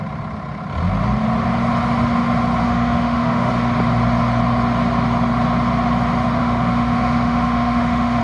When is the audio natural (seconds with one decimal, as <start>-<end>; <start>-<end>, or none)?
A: 0.0-2.6; 3.5-6.4